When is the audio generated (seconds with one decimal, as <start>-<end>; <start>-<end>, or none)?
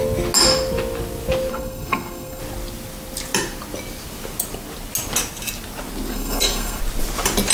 1.5-2.4; 6.1-6.8